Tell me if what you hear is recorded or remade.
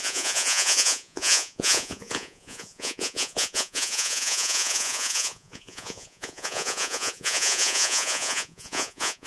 remade